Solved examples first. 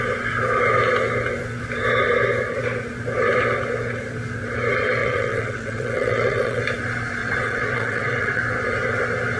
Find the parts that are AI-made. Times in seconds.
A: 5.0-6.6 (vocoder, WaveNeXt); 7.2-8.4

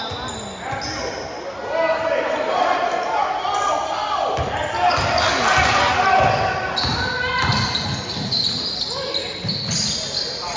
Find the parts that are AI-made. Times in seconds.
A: none